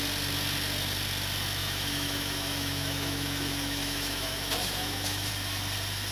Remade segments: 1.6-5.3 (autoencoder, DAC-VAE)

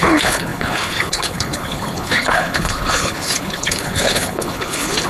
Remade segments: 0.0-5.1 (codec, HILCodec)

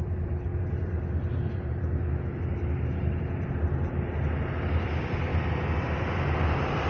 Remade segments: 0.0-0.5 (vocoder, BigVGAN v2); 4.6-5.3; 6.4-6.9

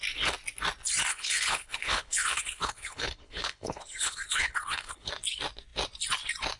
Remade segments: 1.1-5.1 (codec, HILCodec)

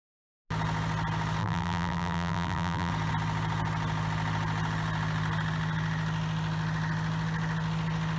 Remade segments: 1.4-2.9 (vocoder, BigVGAN v2)

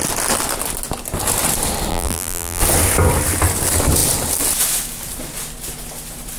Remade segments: 1.9-2.6 (vocoder, BigVGAN v2)

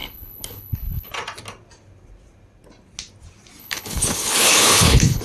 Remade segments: 0.0-1.1 (codec, HILCodec); 3.6-5.2